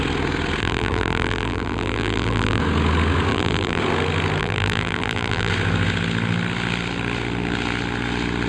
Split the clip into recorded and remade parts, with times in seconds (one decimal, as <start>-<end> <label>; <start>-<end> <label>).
0.0-0.6 recorded; 0.6-2.6 remade; 2.6-3.3 recorded; 3.3-3.8 remade; 3.8-4.4 recorded; 4.4-5.5 remade; 5.5-8.5 recorded